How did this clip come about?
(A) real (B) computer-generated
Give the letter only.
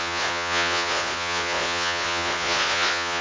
B